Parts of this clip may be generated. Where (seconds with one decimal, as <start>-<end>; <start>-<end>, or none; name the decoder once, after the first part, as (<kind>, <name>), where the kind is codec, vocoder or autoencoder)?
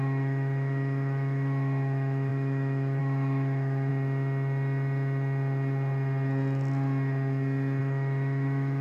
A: 0.0-3.9 (autoencoder, DAC-VAE); 7.8-8.8